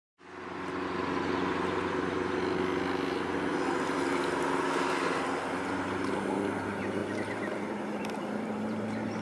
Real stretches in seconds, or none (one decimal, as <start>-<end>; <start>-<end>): 0.0-7.0